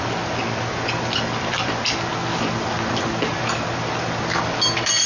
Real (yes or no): yes